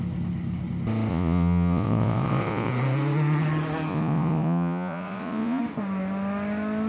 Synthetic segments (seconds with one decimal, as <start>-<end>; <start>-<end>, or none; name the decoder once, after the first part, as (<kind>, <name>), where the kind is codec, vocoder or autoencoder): 1.1-2.7 (vocoder, Vocos); 3.9-5.6